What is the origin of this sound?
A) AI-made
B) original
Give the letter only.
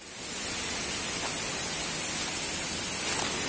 B